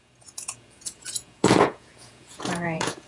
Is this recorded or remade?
remade